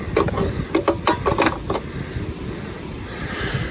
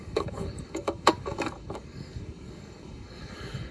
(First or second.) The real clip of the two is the first